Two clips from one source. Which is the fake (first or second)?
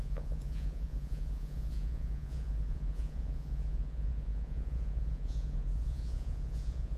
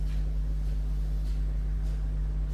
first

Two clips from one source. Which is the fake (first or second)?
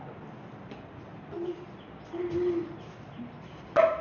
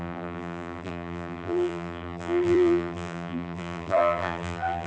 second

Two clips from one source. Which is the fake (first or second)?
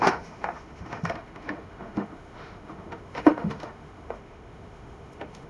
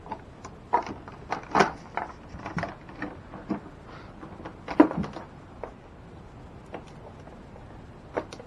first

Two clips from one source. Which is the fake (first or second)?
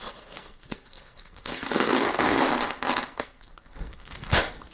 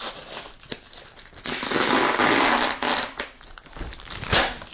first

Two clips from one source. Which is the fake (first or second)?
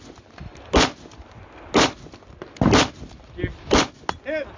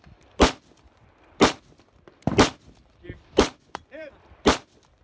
second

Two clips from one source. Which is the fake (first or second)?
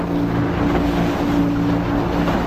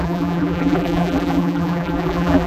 second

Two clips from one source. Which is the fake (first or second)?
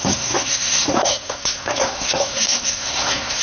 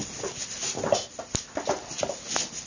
first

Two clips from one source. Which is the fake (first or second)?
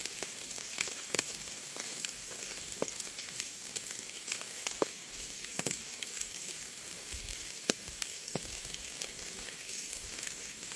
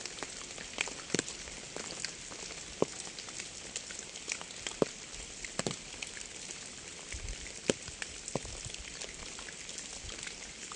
first